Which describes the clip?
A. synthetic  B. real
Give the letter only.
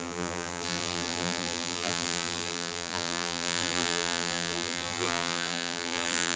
A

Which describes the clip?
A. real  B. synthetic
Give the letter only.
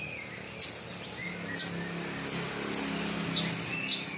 A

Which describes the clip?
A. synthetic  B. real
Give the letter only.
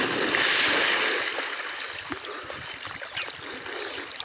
A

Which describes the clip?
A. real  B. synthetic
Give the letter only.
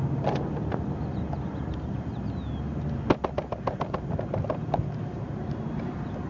A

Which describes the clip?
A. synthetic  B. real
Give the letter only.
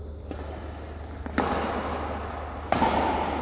B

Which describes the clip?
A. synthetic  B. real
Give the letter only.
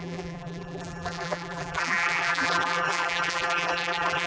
A